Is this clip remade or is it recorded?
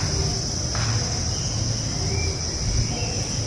recorded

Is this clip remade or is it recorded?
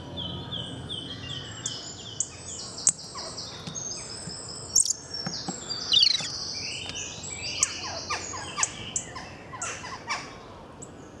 recorded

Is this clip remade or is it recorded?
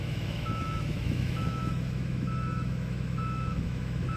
remade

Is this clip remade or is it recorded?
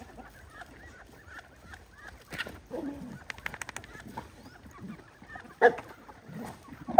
recorded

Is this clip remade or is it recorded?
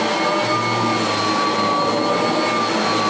recorded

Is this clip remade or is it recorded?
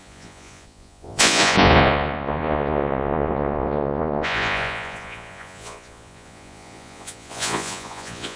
remade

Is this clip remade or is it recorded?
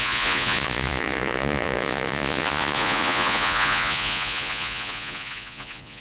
remade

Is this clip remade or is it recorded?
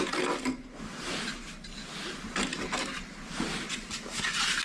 recorded